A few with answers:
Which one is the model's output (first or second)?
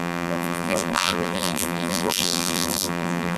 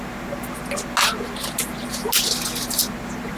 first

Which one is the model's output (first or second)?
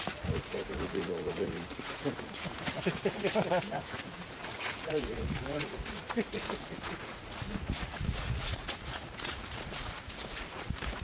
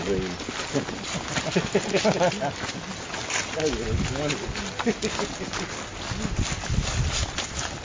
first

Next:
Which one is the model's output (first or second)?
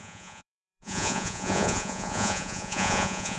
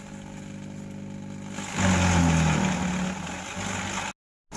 first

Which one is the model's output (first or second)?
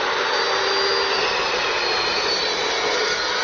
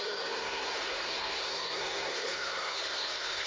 second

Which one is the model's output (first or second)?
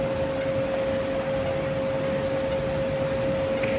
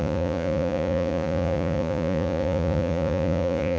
second